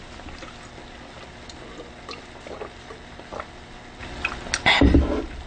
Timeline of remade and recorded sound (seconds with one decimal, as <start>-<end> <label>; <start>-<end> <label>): 0.0-5.5 recorded